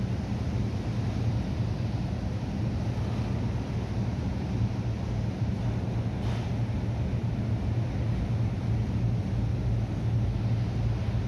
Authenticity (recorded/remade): recorded